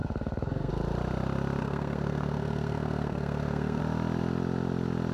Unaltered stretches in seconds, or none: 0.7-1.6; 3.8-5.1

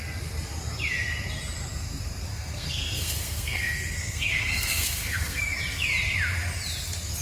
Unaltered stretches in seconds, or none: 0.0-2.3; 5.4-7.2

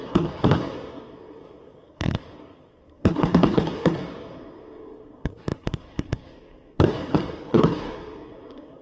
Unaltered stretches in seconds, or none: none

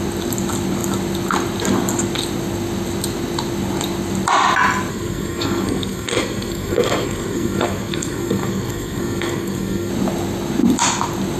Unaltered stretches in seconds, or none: 0.0-4.9; 9.9-11.4

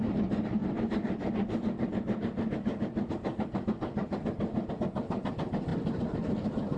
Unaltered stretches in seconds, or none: 0.0-6.8